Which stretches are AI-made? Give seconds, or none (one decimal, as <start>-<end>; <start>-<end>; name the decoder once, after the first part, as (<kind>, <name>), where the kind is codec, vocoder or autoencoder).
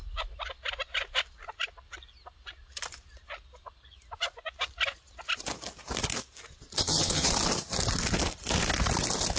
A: 6.8-7.3 (vocoder, HiFi-GAN)